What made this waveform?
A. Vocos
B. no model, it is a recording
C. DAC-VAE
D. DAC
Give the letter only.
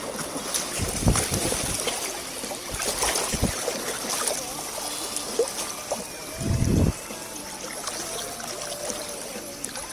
B